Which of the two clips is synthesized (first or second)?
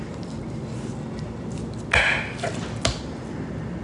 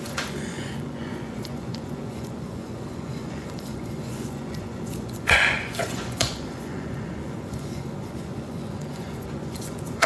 second